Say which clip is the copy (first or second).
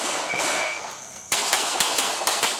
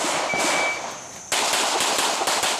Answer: first